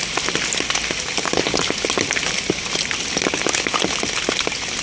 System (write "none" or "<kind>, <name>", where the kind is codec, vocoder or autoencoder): none